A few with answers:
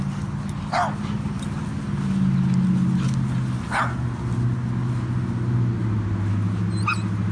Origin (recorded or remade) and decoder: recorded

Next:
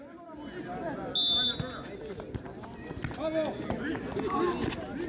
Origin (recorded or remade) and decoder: recorded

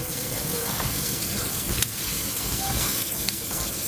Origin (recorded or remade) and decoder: remade, codec, SNAC